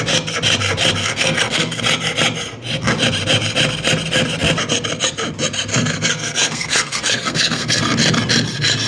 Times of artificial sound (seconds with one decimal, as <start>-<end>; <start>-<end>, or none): 1.0-1.8; 5.7-7.8